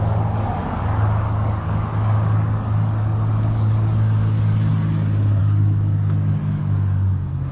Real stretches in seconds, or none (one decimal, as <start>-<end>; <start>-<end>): 4.7-5.4